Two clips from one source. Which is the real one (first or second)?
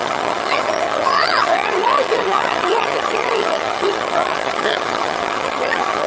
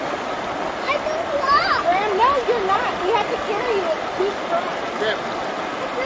second